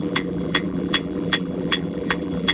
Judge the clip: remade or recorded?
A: remade